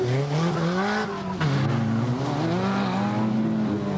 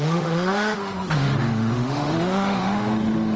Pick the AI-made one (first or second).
second